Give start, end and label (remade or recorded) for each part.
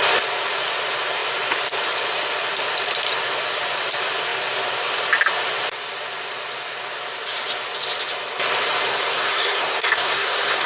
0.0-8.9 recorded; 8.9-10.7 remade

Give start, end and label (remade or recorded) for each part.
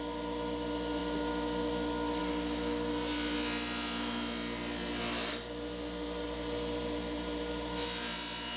0.0-8.6 recorded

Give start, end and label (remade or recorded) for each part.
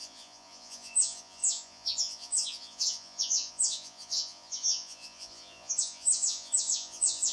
0.0-7.3 remade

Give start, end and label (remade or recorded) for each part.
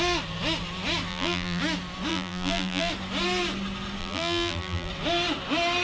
0.0-1.1 recorded; 1.1-1.6 remade; 1.6-2.1 recorded; 2.1-2.9 remade; 2.9-4.0 recorded; 4.0-4.9 remade; 4.9-5.8 recorded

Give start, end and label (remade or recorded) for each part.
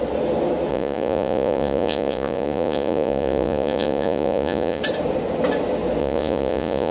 0.0-0.7 recorded; 0.7-4.8 remade; 4.8-6.0 recorded; 6.0-6.9 remade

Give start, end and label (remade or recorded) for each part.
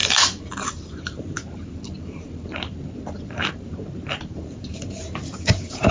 0.0-5.9 remade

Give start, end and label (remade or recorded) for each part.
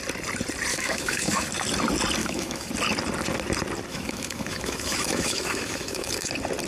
0.0-0.7 recorded; 0.7-1.5 remade; 1.5-2.2 recorded; 2.2-2.7 remade; 2.7-3.9 recorded; 3.9-6.3 remade; 6.3-6.7 recorded